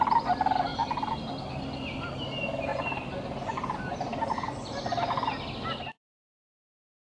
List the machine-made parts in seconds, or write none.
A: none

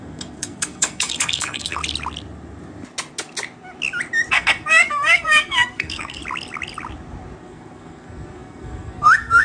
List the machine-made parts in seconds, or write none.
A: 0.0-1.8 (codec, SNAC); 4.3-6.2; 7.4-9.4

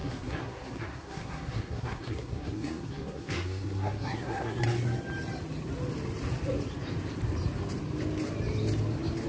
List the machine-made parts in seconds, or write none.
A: 0.0-4.6 (codec, SNAC)

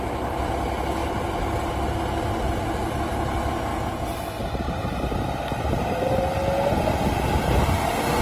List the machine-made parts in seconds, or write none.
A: none